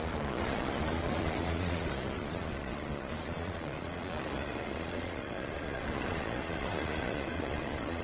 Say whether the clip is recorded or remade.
remade